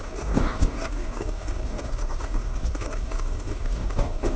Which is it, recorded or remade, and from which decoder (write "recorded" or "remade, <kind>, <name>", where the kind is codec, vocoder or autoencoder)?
remade, codec, DAC